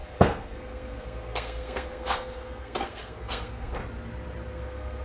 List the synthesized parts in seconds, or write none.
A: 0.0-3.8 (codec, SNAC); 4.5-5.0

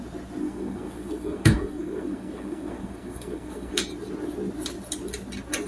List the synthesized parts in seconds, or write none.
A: 0.4-3.8 (codec, SNAC)

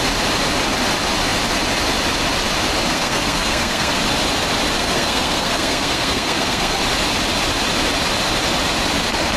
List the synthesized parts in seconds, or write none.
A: 2.9-4.0 (codec, SNAC); 4.8-6.8

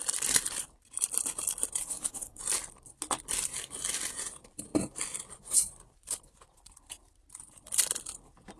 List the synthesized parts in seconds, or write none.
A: 1.8-2.4 (codec, SNAC)

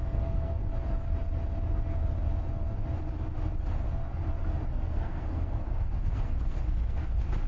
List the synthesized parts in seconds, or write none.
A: 0.0-0.6 (codec, SNAC); 4.7-7.5